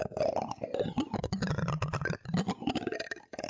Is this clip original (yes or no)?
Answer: yes